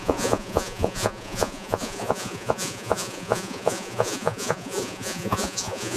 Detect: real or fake fake